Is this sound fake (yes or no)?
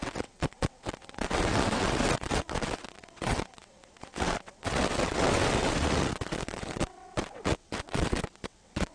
yes